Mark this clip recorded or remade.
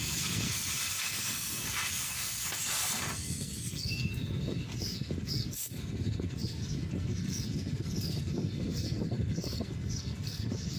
remade